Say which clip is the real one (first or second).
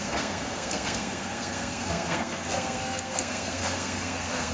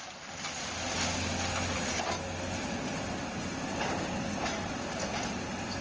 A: second